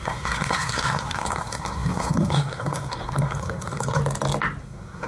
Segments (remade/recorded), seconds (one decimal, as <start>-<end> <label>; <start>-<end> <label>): 0.0-4.0 remade; 4.0-4.6 recorded; 4.6-5.1 remade